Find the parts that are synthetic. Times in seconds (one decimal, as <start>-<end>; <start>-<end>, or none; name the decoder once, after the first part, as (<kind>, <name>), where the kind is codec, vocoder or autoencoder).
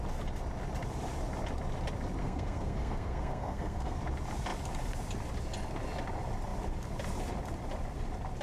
2.2-4.0 (codec, SNAC)